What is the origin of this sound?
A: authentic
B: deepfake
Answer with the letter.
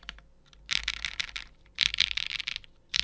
A